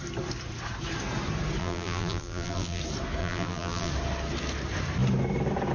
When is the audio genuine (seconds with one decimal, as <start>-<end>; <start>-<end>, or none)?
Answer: 0.0-1.6; 2.8-3.2; 3.9-5.7